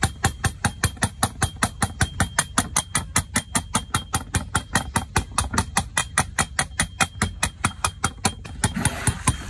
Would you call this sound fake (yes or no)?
no